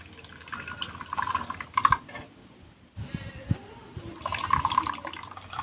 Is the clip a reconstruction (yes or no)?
no